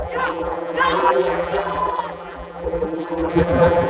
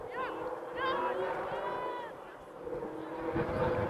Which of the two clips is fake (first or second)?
first